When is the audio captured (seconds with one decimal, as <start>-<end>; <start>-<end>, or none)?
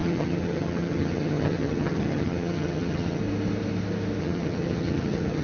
3.2-4.2